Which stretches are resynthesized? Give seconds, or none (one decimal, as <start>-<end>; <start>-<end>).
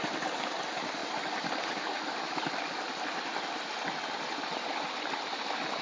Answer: none